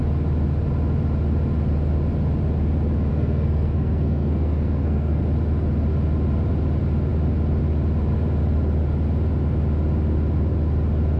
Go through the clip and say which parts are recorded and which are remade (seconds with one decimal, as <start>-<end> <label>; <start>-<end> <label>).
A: 0.0-3.1 recorded; 3.1-5.2 remade; 5.2-11.2 recorded